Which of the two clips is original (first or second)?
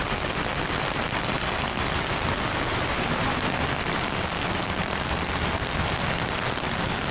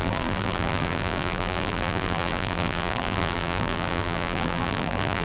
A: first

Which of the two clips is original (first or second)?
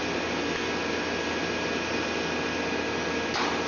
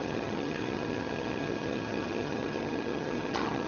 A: first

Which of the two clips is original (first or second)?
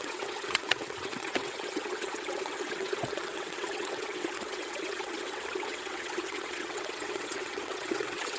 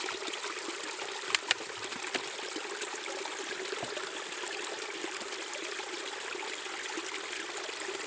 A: second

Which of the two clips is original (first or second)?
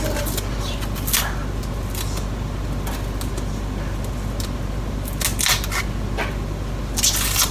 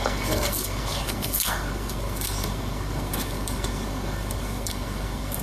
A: first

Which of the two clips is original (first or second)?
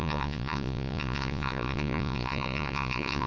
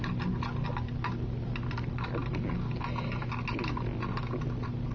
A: second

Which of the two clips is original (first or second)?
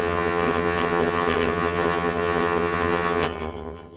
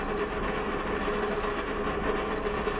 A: second